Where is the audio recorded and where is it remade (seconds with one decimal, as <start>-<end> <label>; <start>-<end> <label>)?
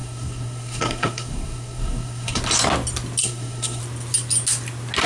0.0-2.4 remade; 2.4-3.2 recorded; 3.2-3.8 remade; 3.8-5.1 recorded